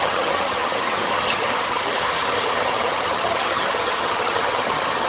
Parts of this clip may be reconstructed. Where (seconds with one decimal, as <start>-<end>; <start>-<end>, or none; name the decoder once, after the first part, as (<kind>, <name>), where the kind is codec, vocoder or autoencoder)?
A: 0.0-5.1 (vocoder, HiFi-GAN)